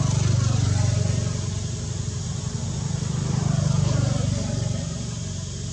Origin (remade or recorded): recorded